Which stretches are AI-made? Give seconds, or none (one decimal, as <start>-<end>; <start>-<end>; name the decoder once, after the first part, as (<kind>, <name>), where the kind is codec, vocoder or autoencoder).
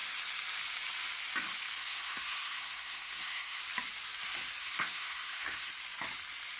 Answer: 1.8-3.6 (codec, SNAC); 4.6-5.7